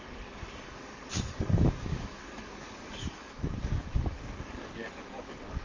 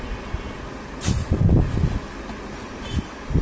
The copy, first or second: first